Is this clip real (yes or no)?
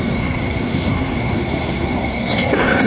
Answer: no